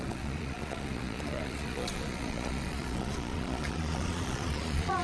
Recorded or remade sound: remade